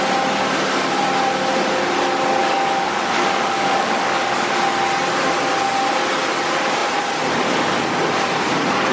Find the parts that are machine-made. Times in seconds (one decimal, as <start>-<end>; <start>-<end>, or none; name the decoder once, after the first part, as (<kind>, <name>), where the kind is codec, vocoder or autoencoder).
2.4-4.6 (codec, DAC)